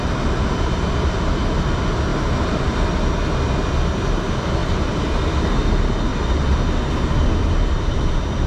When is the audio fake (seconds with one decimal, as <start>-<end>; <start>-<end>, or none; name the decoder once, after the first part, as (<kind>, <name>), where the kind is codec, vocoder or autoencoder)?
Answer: 2.1-3.0 (vocoder, BigVGAN v2); 4.6-5.2